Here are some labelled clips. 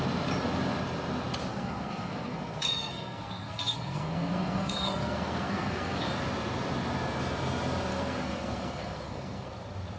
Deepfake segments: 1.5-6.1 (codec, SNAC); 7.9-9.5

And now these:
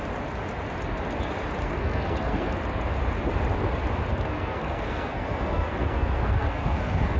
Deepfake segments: 1.6-2.6 (codec, SNAC); 4.1-7.2

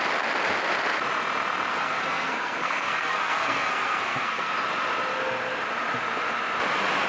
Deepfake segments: 1.7-4.5 (codec, SNAC)

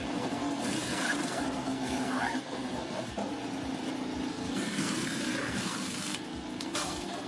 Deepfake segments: 0.0-3.2 (codec, SNAC); 4.3-7.3

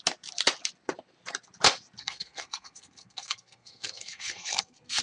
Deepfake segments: 2.0-5.0 (codec, SNAC)

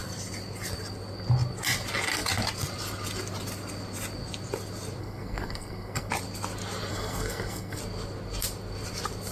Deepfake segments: 5.0-6.1 (codec, SNAC); 6.9-7.8